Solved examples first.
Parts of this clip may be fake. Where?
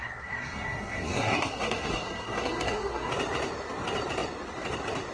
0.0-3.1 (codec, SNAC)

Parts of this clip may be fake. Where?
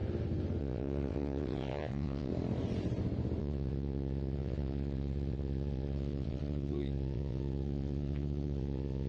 0.6-2.3 (vocoder, WaveNeXt); 3.4-9.1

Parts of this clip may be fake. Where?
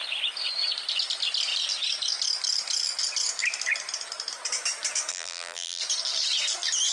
5.1-5.8 (vocoder, BigVGAN v2)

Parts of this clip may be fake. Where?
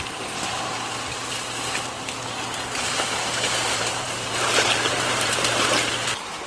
0.0-0.5 (vocoder, BigVGAN v2); 3.4-6.5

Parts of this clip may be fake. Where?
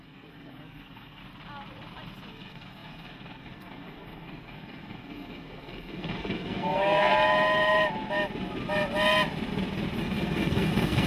0.0-1.2 (codec, SNAC); 2.3-7.1; 10.0-11.1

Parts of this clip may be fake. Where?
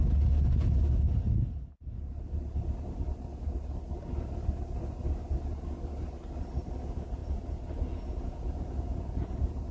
7.2-9.7 (vocoder, Vocos)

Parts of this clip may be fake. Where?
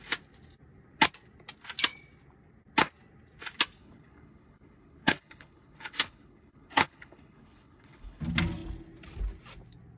3.8-8.2 (codec, HILCodec)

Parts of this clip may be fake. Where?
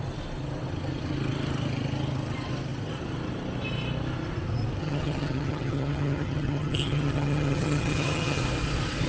4.8-8.4 (vocoder, HiFi-GAN)